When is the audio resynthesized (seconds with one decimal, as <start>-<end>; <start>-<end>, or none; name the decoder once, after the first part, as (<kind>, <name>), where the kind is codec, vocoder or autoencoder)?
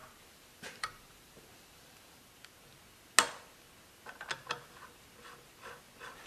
0.0-2.3 (vocoder, BigVGAN v2)